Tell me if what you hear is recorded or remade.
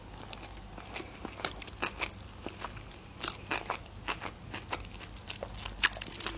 recorded